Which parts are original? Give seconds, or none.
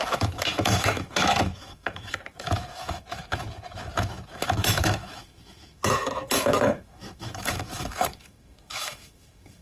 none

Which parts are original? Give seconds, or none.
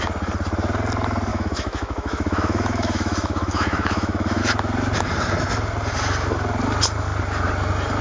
0.0-1.3; 4.4-8.0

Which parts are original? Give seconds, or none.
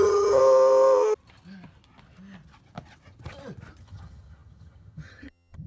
0.4-3.8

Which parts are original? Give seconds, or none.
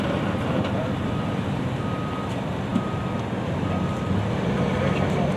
0.0-1.0; 1.8-5.4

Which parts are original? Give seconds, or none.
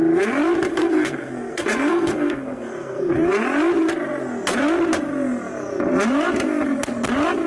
0.0-0.7; 3.1-7.5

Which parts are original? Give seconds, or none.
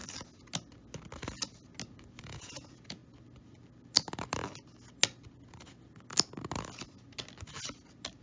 0.0-2.2; 3.0-8.2